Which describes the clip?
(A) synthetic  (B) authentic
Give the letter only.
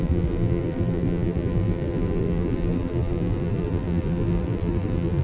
A